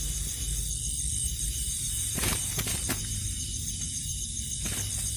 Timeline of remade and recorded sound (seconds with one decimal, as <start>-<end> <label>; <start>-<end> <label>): 0.0-1.2 recorded; 1.2-4.2 remade; 4.2-5.2 recorded